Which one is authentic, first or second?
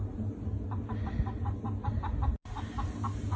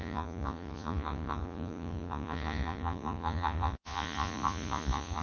first